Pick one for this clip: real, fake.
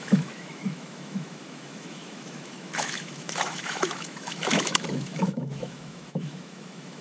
fake